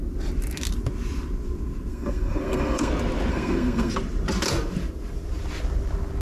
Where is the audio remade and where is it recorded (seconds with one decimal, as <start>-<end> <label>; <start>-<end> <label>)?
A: 0.0-1.9 recorded; 1.9-2.9 remade; 2.9-3.3 recorded; 3.3-3.9 remade; 3.9-6.2 recorded